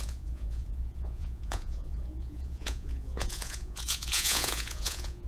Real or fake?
fake